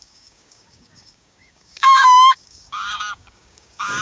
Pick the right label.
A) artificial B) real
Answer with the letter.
A